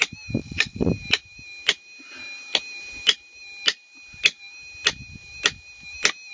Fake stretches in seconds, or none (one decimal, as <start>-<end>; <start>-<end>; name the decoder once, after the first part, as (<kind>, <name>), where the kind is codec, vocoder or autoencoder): 0.4-0.9 (vocoder, WaveNeXt)